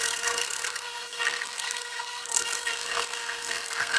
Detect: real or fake fake